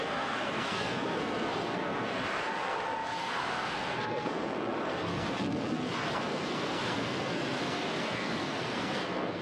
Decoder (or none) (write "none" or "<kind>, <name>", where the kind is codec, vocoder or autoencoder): codec, SNAC